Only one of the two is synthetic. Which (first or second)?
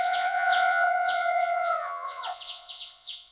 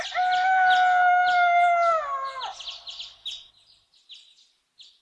first